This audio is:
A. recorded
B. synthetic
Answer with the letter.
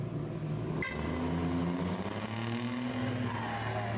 A